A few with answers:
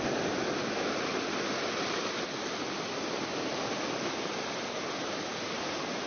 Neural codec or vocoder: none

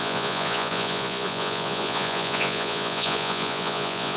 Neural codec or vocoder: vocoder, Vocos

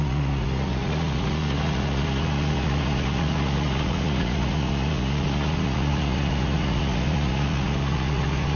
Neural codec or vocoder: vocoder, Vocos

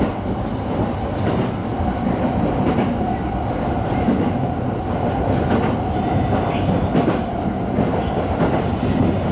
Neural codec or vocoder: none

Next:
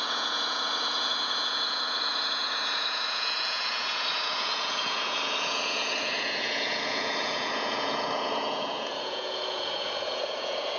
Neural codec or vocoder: vocoder, Vocos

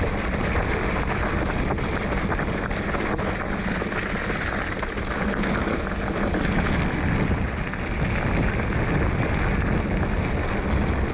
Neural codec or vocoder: none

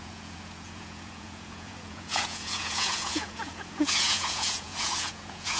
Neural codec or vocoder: vocoder, Vocos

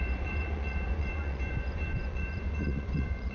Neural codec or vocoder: vocoder, Vocos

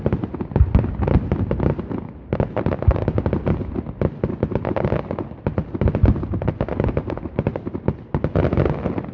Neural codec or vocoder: none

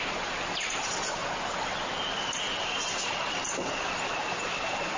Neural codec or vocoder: none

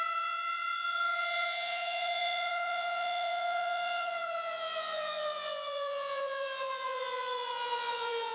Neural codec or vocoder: vocoder, Vocos